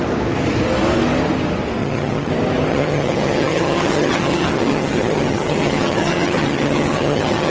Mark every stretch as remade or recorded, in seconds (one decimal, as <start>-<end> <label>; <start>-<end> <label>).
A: 0.0-1.8 recorded; 1.8-2.3 remade; 2.3-2.7 recorded; 2.7-7.5 remade